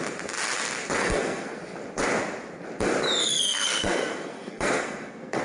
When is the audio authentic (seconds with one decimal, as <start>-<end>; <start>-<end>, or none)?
0.0-1.0; 1.6-3.2